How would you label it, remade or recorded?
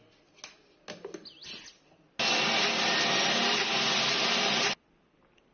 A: recorded